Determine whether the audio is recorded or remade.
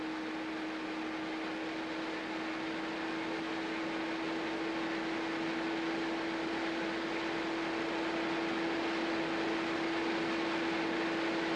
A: recorded